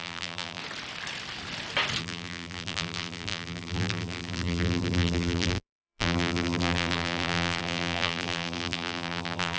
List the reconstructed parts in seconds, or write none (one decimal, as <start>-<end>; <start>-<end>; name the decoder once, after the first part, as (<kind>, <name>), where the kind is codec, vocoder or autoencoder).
0.0-0.6 (vocoder, BigVGAN v2); 2.0-9.6